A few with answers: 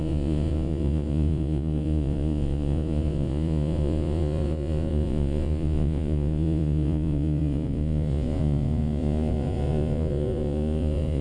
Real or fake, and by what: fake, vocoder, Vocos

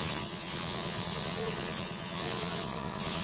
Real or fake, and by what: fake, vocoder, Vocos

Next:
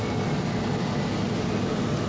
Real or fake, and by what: real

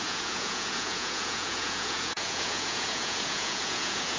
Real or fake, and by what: fake, vocoder, Vocos